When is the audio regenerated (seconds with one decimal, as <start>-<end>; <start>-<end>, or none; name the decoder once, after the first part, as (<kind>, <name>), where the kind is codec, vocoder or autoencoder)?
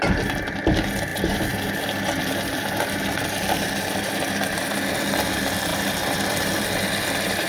1.1-2.8 (vocoder, BigVGAN v2); 5.7-6.7